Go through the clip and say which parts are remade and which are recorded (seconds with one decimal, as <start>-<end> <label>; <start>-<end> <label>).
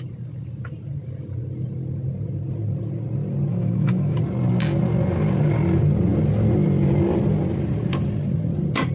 0.0-3.5 recorded; 3.5-4.2 remade; 4.2-8.9 recorded